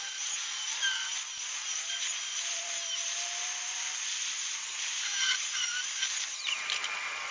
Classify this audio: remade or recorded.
remade